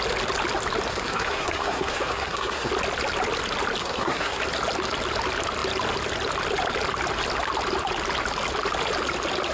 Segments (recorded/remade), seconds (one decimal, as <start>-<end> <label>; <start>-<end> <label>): 0.0-0.9 recorded; 0.9-2.7 remade; 2.7-3.8 recorded; 3.8-4.4 remade; 4.4-9.5 recorded

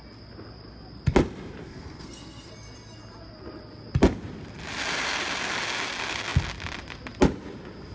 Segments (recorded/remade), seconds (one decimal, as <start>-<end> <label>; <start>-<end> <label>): 0.0-1.6 recorded; 1.6-2.5 remade; 2.5-7.9 recorded

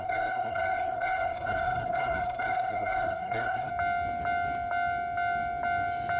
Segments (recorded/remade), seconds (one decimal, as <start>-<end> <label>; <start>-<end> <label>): 0.0-3.7 remade; 3.7-6.2 recorded

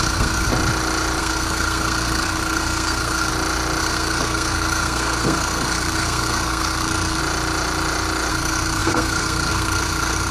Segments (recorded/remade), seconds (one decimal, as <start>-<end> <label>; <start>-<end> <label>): 0.0-0.5 remade; 0.5-1.2 recorded; 1.2-3.3 remade; 3.3-3.8 recorded; 3.8-7.2 remade; 7.2-8.3 recorded; 8.3-10.3 remade

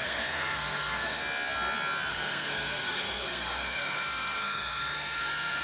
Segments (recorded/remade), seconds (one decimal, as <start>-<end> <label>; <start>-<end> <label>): 0.0-1.2 remade; 1.2-2.1 recorded; 2.1-5.6 remade

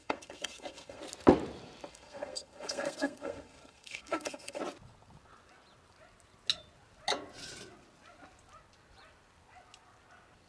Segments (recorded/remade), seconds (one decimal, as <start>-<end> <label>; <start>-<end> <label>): 0.0-1.0 remade; 1.0-1.9 recorded; 1.9-4.6 remade; 4.6-10.5 recorded

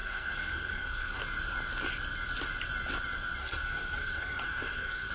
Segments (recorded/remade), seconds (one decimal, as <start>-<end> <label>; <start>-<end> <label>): 0.0-1.2 remade; 1.2-3.4 recorded; 3.4-5.1 remade

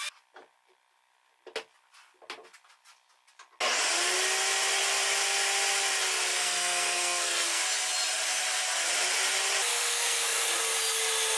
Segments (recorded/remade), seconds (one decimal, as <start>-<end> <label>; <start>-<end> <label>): 0.0-6.3 recorded; 6.3-7.6 remade; 7.6-9.7 recorded; 9.7-10.5 remade; 10.5-11.4 recorded